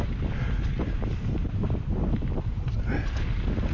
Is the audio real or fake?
real